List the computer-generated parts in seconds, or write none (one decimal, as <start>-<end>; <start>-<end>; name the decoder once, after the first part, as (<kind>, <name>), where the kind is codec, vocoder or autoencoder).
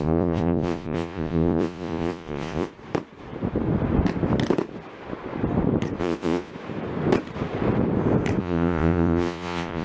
0.0-2.7 (vocoder, Vocos); 6.0-6.5; 8.4-9.8